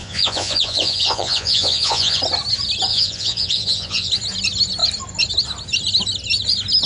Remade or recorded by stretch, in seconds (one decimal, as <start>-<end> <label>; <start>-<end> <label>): 0.0-2.2 remade; 2.2-2.9 recorded; 2.9-4.1 remade; 4.1-6.9 recorded